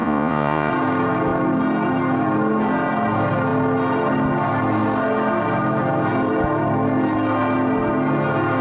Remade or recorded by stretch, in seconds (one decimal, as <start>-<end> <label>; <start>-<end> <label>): 0.0-0.7 remade; 0.7-8.6 recorded